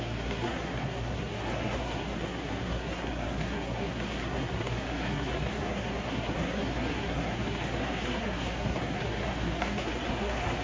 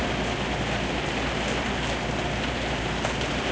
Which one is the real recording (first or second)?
second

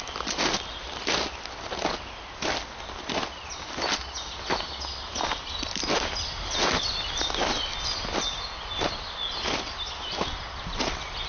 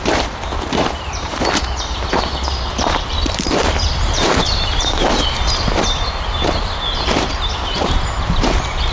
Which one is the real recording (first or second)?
first